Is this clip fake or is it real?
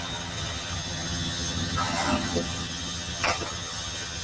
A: fake